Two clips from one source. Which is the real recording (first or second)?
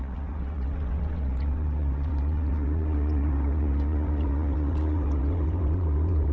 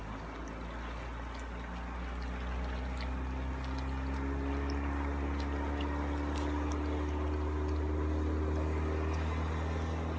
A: second